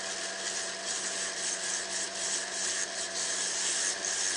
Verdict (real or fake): real